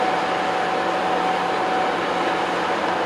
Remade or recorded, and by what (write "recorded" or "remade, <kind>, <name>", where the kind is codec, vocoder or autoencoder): recorded